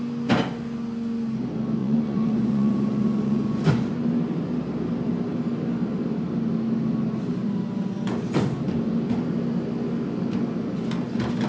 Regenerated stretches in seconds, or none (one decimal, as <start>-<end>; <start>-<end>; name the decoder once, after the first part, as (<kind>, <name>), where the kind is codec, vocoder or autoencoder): 1.8-3.7 (vocoder, Vocos)